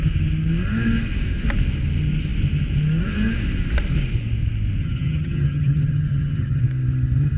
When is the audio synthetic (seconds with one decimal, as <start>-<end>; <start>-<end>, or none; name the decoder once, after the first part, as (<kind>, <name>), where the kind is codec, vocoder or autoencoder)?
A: 4.8-6.6 (vocoder, HiFi-GAN)